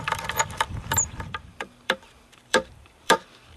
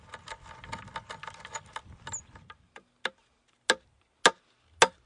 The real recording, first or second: second